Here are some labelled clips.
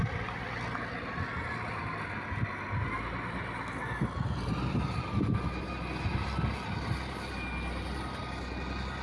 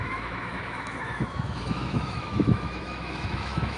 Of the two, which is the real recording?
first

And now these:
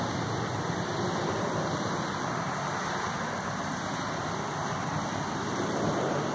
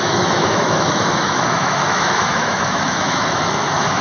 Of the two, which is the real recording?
first